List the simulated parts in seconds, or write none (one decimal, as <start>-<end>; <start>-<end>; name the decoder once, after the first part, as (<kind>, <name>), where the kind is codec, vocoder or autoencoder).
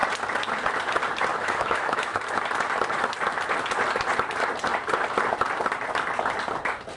1.3-2.2 (autoencoder, DAC-VAE)